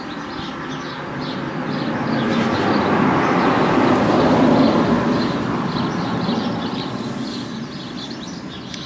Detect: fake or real real